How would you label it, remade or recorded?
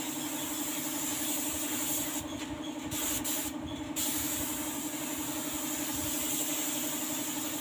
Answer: recorded